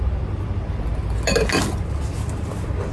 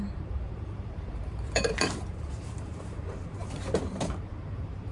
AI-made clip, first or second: second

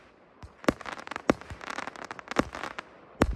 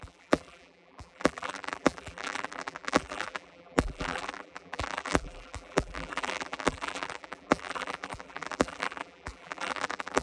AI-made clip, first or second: second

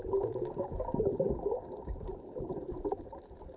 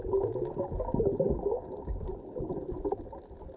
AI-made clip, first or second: first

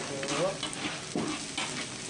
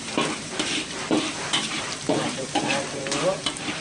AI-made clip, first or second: second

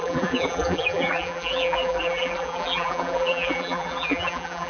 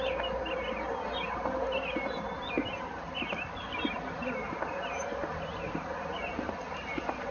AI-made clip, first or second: first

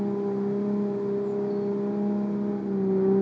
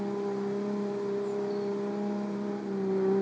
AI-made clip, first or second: second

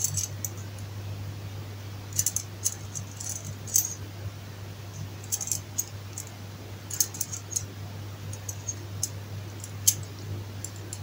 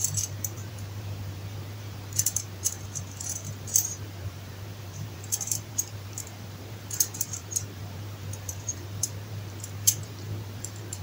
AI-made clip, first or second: second